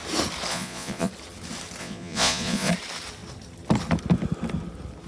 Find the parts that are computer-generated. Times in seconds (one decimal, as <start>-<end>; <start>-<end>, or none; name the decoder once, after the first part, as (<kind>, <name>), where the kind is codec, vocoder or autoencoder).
0.5-1.1 (vocoder, Vocos); 1.8-2.7